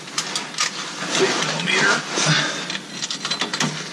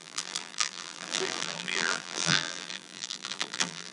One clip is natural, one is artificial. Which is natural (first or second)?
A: first